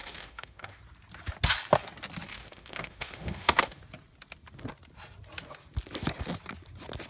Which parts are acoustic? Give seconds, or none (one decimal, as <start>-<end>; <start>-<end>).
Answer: 0.8-2.3; 3.8-7.1